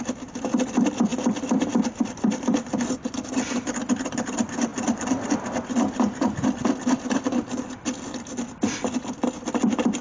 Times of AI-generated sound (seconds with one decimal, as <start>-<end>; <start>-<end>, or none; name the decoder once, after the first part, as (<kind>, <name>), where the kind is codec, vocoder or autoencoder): 4.7-5.3 (vocoder, BigVGAN v2)